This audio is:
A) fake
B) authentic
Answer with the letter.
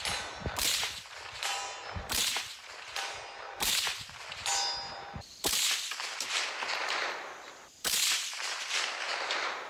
A